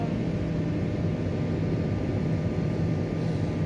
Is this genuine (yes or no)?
yes